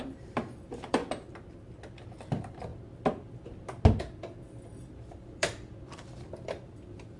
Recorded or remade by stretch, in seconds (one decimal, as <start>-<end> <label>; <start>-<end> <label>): 0.0-1.0 remade; 1.0-2.3 recorded; 2.3-2.7 remade; 2.7-5.1 recorded; 5.1-5.5 remade; 5.5-6.0 recorded; 6.0-7.2 remade